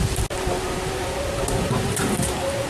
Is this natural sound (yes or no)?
yes